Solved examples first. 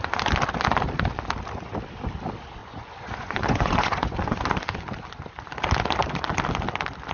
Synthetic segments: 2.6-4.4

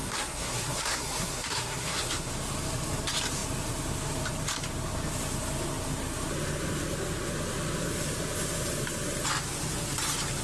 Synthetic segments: 0.0-2.3

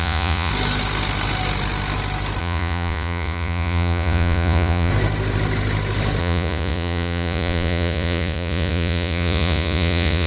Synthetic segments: 0.0-0.5; 2.4-4.9; 6.2-10.3

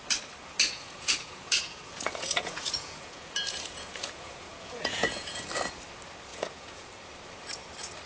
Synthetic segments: 0.7-5.5; 6.3-6.9